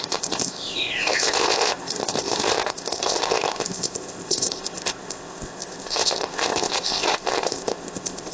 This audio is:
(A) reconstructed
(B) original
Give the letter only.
A